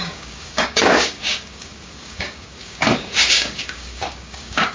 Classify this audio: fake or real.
fake